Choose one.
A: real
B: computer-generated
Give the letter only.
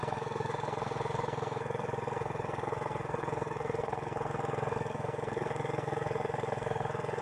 B